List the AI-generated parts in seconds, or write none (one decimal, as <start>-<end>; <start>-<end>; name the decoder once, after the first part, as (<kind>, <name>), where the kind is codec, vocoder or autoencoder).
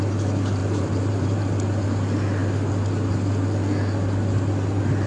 0.6-1.5 (vocoder, BigVGAN v2)